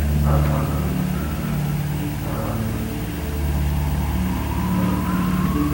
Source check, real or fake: real